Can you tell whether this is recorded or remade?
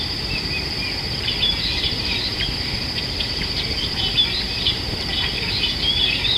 remade